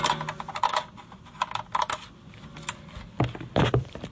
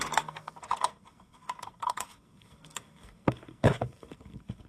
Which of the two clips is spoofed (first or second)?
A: second